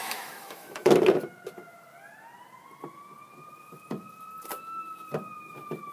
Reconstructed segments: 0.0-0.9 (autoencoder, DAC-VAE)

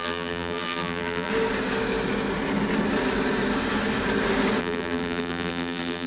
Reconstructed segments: 0.0-1.3 (vocoder, BigVGAN v2); 4.6-6.1

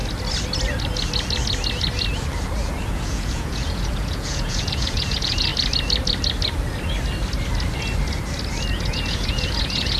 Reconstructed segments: 2.9-5.5 (vocoder, Vocos); 8.7-10.0